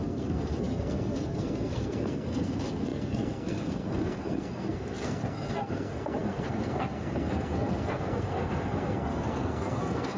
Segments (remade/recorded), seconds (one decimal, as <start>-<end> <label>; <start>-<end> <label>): 0.0-10.2 remade